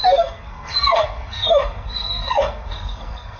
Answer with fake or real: fake